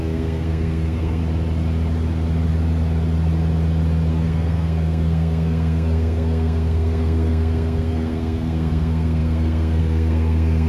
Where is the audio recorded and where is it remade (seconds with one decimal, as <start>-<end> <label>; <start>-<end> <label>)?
0.0-1.2 remade; 1.2-4.1 recorded; 4.1-10.7 remade